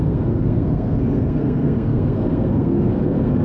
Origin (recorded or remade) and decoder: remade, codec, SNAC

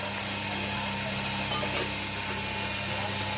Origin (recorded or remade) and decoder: recorded